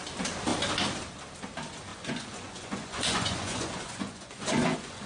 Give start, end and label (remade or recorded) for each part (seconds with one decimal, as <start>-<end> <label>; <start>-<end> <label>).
0.0-1.9 recorded; 1.9-5.1 remade